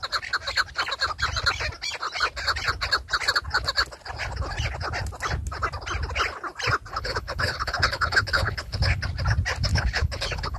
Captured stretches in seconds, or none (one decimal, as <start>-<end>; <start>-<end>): 0.0-6.9; 9.0-9.7